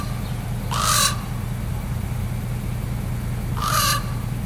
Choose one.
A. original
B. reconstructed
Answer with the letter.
A